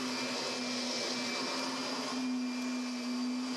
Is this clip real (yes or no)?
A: yes